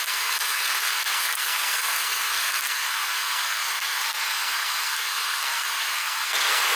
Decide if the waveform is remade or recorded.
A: remade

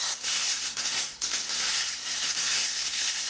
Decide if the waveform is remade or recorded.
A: remade